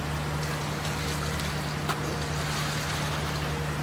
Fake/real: real